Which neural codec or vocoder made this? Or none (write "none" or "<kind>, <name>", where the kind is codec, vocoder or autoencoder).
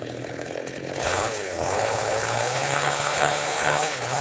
codec, HILCodec